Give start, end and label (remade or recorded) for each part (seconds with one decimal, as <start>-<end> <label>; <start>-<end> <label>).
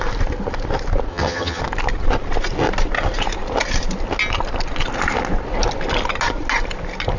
0.0-1.1 recorded; 1.1-1.6 remade; 1.6-7.2 recorded